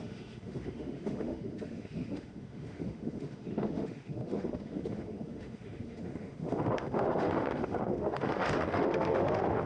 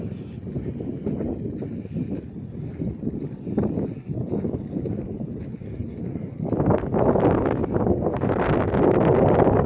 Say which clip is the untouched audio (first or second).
second